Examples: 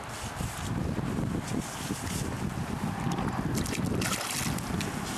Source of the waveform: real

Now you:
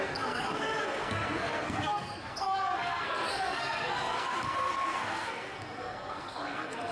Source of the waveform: fake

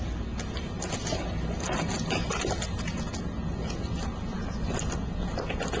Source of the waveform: real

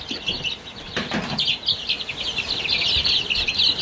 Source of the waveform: real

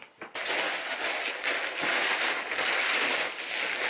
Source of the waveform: real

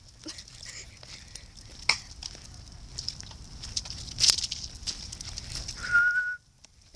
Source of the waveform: real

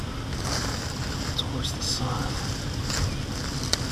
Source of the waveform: real